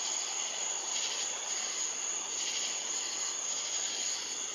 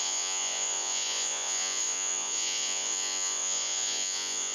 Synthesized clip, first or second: second